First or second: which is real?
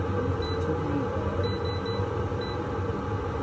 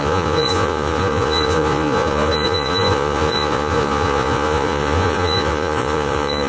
first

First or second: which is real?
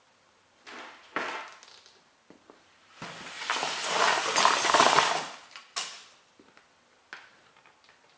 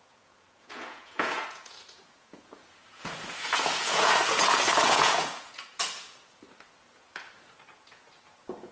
first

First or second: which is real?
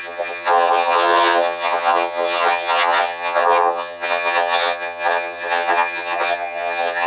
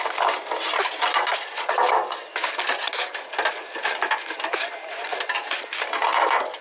second